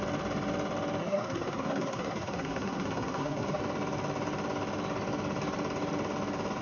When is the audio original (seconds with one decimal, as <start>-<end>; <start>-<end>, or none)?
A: 0.0-1.0; 3.6-6.6